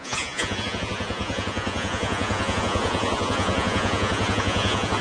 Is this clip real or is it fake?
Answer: fake